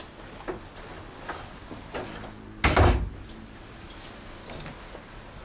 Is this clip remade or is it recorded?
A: recorded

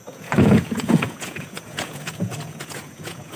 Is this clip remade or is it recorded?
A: remade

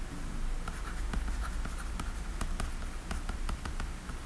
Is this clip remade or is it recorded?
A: recorded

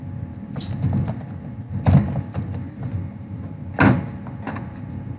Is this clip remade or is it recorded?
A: recorded